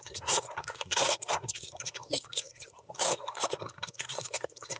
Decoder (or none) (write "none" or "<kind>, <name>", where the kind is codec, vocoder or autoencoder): codec, SNAC